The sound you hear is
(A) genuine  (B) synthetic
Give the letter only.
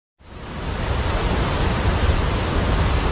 A